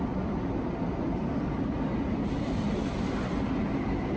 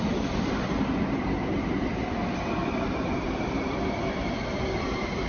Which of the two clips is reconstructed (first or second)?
second